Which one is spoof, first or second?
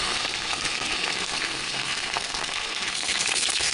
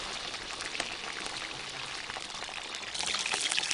first